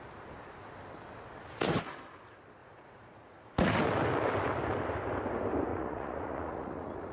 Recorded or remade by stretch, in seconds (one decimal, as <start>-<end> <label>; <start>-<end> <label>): 0.0-2.6 recorded; 2.6-3.7 remade; 3.7-5.7 recorded; 5.7-7.1 remade

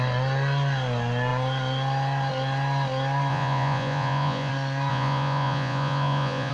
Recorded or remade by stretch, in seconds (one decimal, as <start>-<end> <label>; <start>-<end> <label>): 0.0-3.3 recorded; 3.3-4.5 remade; 4.5-4.9 recorded; 4.9-6.5 remade